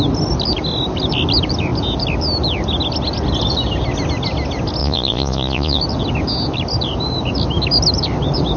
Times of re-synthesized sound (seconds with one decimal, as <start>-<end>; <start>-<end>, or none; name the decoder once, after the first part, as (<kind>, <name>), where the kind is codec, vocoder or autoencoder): 4.8-5.8 (vocoder, Vocos)